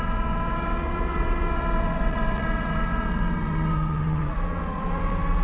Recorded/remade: remade